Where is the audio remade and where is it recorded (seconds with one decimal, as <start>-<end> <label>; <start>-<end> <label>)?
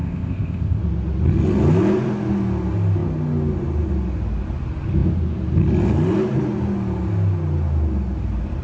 0.0-0.8 remade; 0.8-8.6 recorded